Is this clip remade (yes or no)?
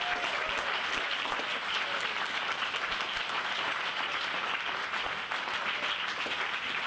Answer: no